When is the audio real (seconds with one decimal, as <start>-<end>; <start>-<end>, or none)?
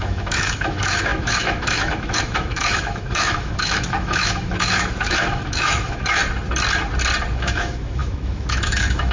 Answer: 6.2-7.3